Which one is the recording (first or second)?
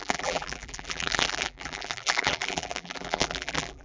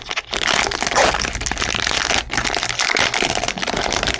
second